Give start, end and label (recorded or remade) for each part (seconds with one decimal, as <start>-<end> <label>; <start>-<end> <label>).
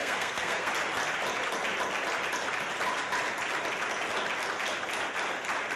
0.0-0.7 remade; 0.7-5.8 recorded